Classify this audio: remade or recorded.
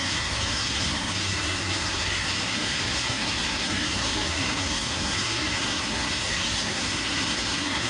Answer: remade